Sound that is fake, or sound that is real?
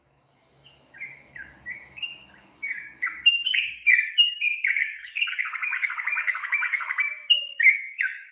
fake